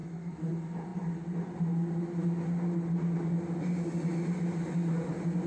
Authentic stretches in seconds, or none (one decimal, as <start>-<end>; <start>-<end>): 0.5-5.5